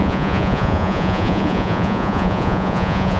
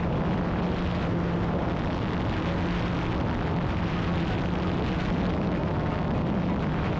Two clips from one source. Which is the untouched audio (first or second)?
second